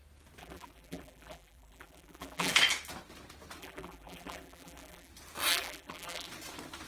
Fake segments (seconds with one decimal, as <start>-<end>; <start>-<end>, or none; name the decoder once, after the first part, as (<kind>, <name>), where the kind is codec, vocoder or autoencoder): 0.4-2.5 (vocoder, BigVGAN v2); 3.6-5.1; 5.5-6.3